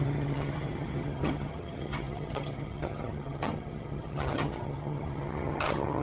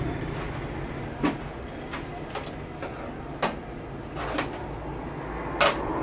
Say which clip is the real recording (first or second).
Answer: second